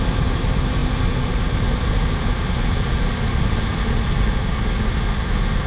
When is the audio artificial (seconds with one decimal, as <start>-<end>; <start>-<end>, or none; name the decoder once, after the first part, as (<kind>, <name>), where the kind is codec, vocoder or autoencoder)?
none